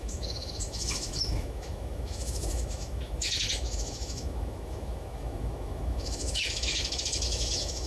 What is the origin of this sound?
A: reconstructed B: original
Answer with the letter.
A